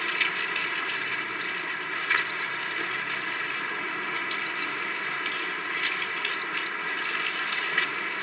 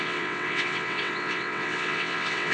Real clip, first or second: first